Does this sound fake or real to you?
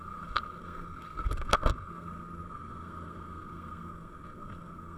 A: fake